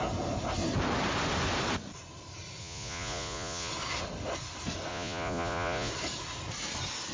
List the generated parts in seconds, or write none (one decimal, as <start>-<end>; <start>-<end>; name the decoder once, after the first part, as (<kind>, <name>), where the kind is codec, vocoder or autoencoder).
2.6-3.7 (vocoder, Vocos); 4.9-5.9